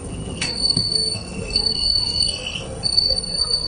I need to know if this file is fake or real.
fake